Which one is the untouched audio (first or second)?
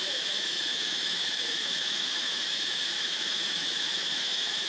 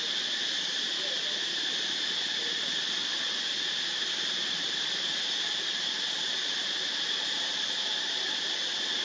second